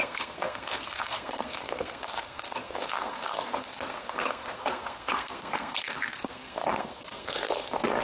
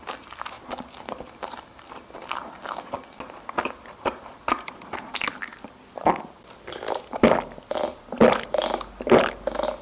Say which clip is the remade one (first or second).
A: first